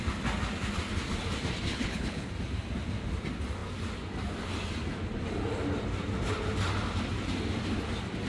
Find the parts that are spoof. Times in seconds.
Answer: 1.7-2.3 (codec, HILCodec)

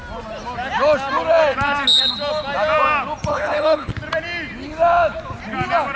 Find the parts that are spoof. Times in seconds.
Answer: 3.3-3.9 (codec, HILCodec)

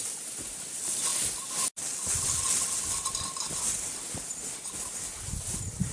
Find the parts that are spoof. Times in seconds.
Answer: none

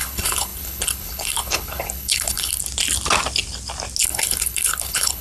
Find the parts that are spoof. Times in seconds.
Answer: 0.0-2.6 (codec, HILCodec); 4.0-5.2

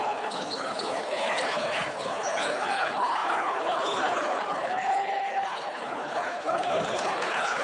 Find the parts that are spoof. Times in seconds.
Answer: 0.0-7.6 (codec, HILCodec)

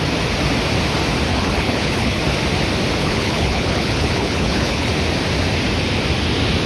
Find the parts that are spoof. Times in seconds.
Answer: 1.3-2.2 (codec, HILCodec); 3.0-4.9

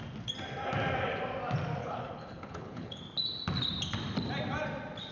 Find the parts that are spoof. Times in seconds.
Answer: 1.8-3.0 (codec, HILCodec)

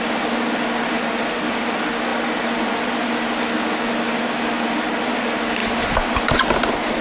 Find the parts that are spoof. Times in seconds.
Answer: none